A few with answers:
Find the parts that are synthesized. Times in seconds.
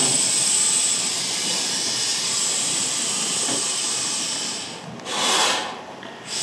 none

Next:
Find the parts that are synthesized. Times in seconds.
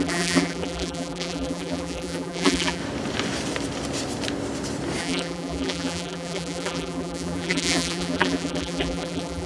0.0-2.8 (vocoder, BigVGAN v2); 5.0-9.5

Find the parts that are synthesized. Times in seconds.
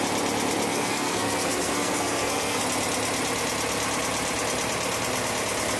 0.7-2.6 (codec, SNAC)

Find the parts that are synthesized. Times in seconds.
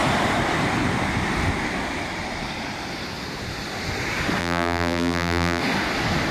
4.4-5.6 (vocoder, BigVGAN v2)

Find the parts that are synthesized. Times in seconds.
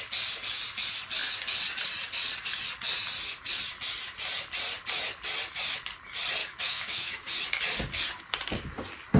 6.4-7.3 (autoencoder, DAC-VAE)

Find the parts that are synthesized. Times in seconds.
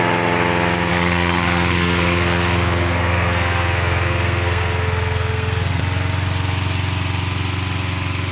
0.9-5.8 (codec, SNAC)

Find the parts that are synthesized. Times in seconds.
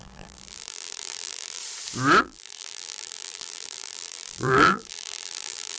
0.0-1.6 (vocoder, BigVGAN v2); 2.2-5.8